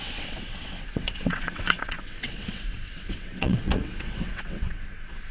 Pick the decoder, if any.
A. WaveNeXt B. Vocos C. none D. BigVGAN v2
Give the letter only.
A